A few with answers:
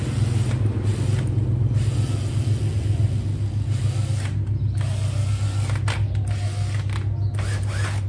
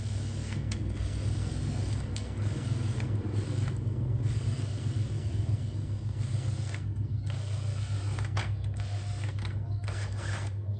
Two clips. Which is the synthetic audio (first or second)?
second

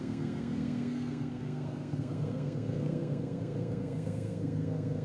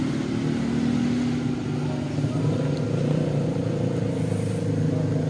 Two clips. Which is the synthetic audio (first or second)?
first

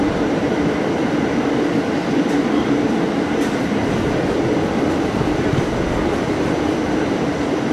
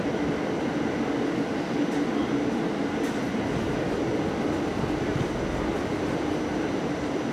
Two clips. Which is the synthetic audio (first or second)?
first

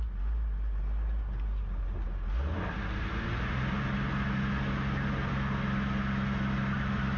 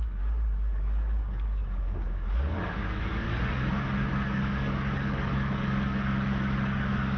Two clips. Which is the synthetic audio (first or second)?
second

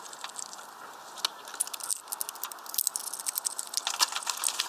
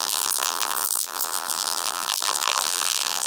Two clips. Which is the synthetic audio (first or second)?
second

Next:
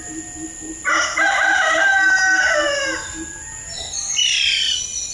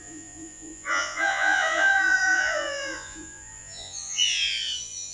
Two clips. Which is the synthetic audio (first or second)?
second